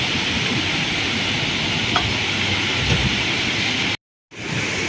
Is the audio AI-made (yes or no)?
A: no